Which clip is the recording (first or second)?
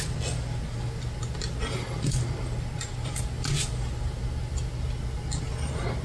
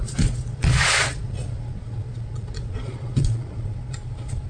first